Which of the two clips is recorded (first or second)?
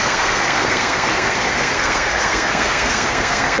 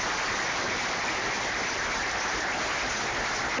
second